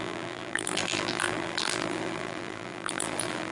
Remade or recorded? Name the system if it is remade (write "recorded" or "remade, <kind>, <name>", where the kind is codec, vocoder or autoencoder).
remade, vocoder, BigVGAN v2